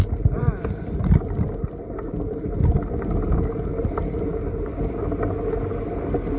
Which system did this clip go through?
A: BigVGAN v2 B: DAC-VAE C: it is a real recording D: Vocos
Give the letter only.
C